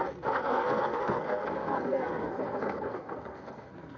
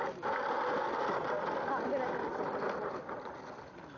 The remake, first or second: first